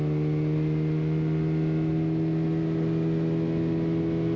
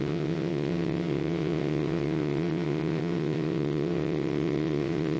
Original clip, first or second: first